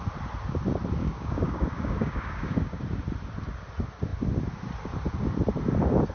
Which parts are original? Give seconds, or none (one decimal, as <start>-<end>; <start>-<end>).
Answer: 0.0-1.0; 2.8-6.1

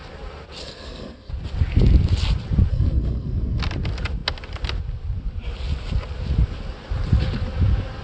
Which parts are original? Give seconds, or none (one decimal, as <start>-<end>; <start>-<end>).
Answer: 0.0-0.6; 1.3-2.7; 3.6-8.0

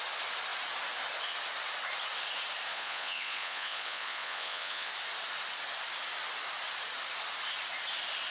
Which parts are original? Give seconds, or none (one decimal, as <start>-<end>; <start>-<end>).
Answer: 0.0-2.7; 4.9-8.3

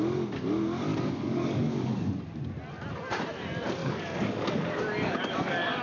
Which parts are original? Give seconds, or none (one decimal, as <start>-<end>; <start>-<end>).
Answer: 0.0-0.9; 2.1-3.8

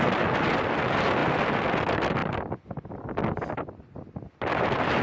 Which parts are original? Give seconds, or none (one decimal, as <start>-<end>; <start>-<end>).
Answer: 0.0-5.0

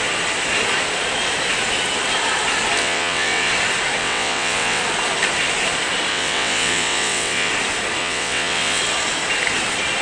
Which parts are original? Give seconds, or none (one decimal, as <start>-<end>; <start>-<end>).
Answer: 0.0-2.8; 3.5-4.0; 4.8-6.1; 7.5-8.0; 8.8-10.0

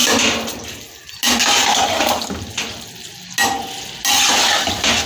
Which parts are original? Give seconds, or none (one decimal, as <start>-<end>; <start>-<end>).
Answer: 0.6-1.6; 3.1-5.1